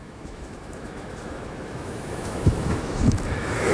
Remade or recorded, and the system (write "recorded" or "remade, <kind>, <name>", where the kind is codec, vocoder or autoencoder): remade, autoencoder, DAC-VAE